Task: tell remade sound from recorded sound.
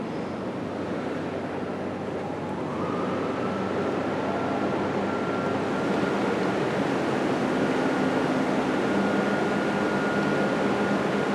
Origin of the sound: recorded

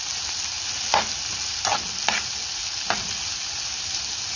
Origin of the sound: recorded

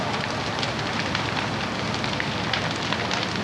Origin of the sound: recorded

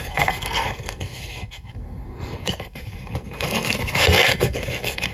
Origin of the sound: remade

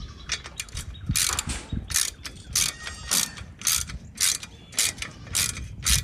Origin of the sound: recorded